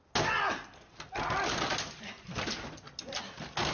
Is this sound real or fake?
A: real